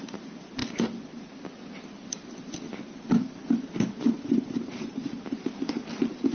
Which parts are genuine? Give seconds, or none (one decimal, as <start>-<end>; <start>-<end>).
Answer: 0.6-4.4